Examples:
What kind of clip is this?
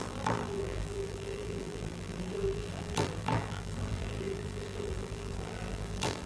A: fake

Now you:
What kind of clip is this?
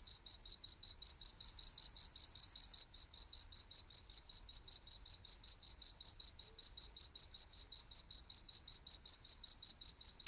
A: real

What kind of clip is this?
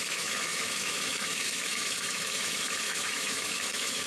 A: fake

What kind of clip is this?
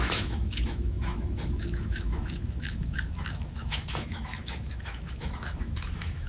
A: fake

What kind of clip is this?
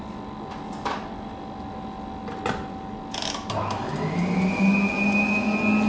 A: real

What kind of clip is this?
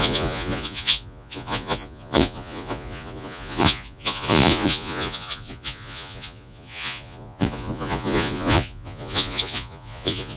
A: fake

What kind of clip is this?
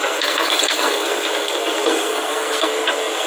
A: fake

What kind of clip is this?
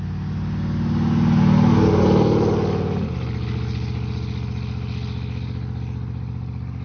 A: real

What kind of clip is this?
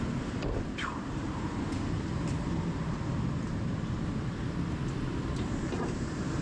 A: fake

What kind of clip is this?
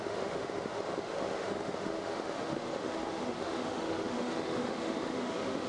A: fake